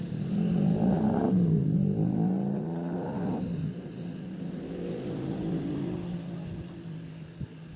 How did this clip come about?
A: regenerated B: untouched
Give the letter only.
B